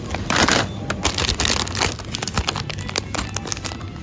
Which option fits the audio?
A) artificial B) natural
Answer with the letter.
B